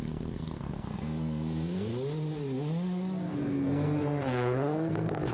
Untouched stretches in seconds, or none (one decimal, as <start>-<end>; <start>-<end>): 1.9-3.3